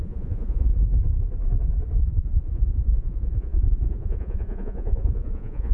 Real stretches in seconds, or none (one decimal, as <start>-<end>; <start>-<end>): 0.7-2.0